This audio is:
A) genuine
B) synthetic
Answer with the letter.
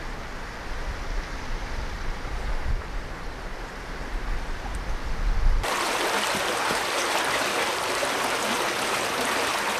A